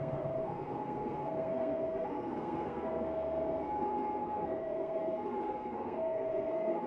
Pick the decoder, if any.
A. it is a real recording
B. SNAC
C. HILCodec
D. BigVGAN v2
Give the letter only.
B